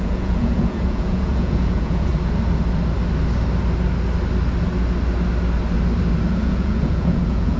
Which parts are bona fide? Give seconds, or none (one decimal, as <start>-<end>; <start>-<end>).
2.1-6.3